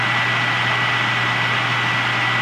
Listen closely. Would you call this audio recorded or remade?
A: recorded